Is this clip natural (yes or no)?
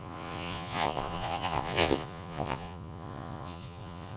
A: no